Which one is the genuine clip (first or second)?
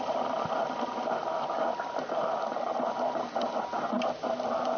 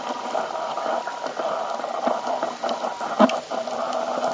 first